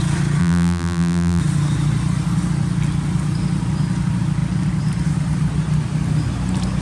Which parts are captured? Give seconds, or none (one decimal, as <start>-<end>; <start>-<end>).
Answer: 0.0-0.4; 1.4-6.8